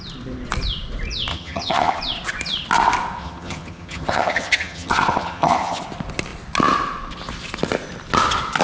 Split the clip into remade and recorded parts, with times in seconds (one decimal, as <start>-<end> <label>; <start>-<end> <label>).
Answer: 0.0-1.3 recorded; 1.3-2.0 remade; 2.0-3.2 recorded; 3.2-5.8 remade; 5.8-8.6 recorded